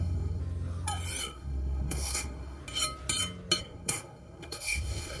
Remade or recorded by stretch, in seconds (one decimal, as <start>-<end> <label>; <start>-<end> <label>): 0.0-0.4 remade; 0.4-1.2 recorded; 1.2-2.6 remade; 2.6-3.6 recorded; 3.6-5.2 remade